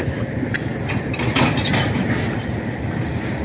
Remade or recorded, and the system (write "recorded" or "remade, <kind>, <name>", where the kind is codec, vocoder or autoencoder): recorded